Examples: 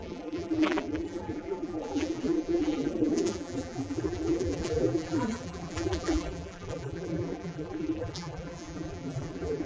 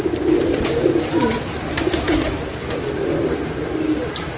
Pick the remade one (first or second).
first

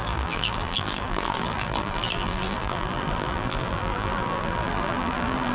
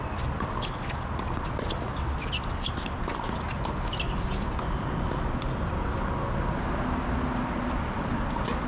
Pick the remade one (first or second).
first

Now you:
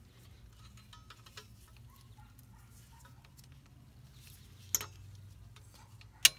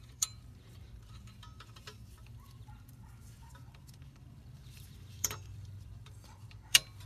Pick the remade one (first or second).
second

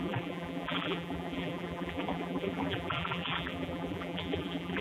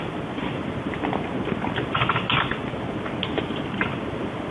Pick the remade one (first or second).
first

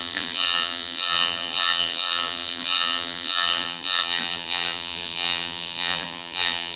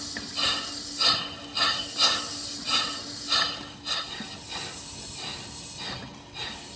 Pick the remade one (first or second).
first